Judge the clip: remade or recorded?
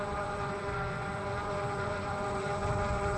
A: remade